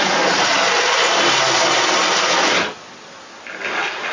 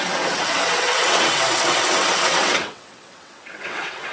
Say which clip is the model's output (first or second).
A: second